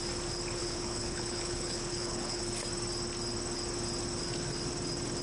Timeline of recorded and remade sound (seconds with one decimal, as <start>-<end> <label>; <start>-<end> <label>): 0.0-0.6 recorded; 0.6-2.4 remade; 2.4-5.2 recorded